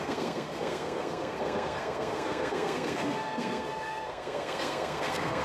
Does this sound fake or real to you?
fake